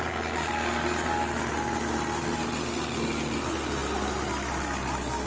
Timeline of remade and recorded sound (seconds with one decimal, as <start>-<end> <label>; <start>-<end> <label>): 0.0-5.3 recorded